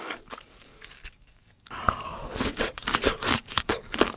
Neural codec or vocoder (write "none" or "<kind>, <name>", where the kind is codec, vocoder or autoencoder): codec, DAC